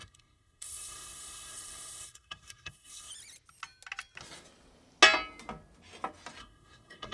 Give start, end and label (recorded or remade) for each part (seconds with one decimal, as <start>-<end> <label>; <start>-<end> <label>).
0.0-3.1 remade; 3.1-6.4 recorded; 6.4-7.1 remade